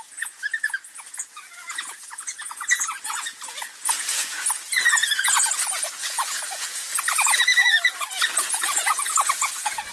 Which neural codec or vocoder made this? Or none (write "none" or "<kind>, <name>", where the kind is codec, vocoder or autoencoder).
vocoder, Vocos